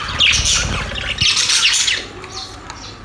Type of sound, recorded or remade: recorded